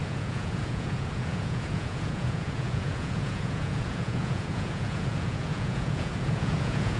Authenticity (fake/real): fake